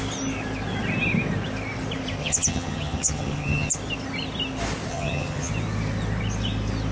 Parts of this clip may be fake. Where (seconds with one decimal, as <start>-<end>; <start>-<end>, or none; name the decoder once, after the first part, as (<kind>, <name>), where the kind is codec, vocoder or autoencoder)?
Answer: 2.2-3.7 (vocoder, HiFi-GAN); 4.9-5.5